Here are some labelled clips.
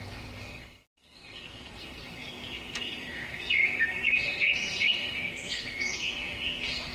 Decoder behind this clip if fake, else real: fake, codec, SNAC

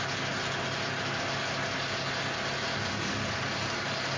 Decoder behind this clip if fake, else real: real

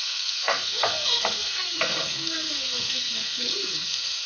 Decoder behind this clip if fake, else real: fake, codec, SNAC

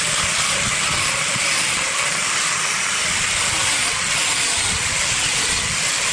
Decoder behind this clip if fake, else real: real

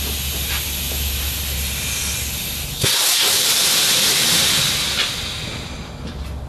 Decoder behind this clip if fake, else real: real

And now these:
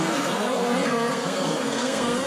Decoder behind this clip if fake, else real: fake, codec, SNAC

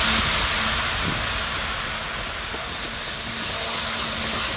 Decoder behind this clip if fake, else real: real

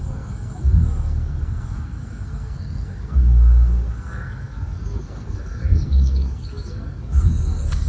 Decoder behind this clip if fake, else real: fake, codec, SNAC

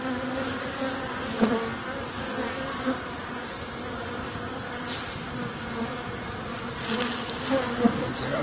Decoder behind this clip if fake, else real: real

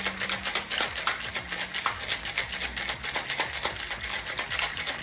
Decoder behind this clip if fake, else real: real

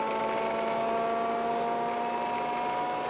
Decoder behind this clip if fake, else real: real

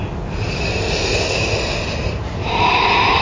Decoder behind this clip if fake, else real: real